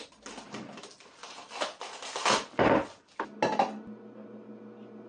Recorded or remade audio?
recorded